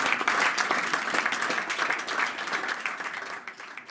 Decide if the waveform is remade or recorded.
recorded